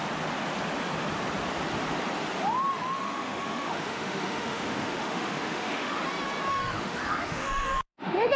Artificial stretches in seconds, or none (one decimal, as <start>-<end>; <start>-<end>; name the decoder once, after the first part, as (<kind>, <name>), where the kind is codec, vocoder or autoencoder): 2.7-6.0 (autoencoder, DAC-VAE); 6.5-8.4